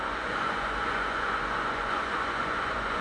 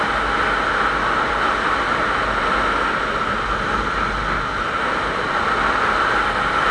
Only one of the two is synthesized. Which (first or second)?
first